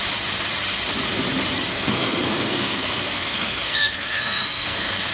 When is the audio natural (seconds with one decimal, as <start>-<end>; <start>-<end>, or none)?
0.0-1.7